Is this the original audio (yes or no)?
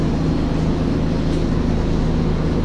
yes